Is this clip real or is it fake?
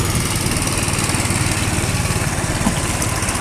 real